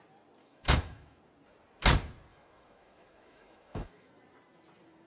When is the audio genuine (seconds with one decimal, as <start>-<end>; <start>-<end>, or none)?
0.0-0.4; 1.2-2.3; 4.1-5.1